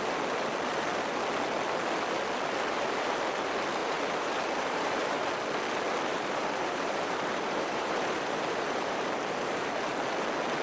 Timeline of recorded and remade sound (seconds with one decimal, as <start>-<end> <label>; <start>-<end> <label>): 0.0-3.8 recorded; 3.8-5.3 remade; 5.3-6.1 recorded; 6.1-9.7 remade; 9.7-10.6 recorded